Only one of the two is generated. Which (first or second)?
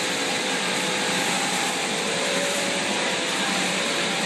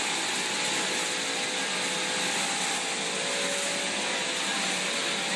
first